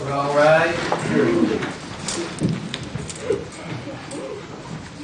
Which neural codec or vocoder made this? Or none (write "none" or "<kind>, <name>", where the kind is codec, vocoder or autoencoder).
none